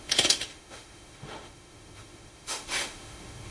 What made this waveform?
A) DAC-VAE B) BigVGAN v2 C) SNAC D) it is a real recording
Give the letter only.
A